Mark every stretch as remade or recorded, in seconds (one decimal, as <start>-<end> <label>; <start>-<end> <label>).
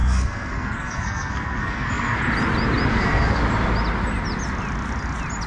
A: 0.0-2.2 remade; 2.2-2.9 recorded; 2.9-3.4 remade; 3.4-5.5 recorded